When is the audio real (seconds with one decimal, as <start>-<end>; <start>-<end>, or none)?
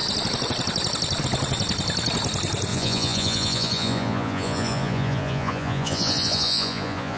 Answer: 0.0-2.7